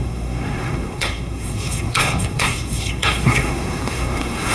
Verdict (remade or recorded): remade